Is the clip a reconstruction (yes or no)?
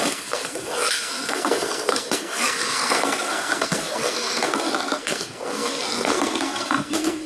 yes